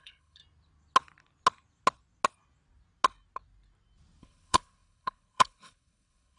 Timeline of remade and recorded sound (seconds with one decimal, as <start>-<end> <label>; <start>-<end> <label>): 0.0-0.4 remade; 0.4-4.2 recorded; 4.2-6.4 remade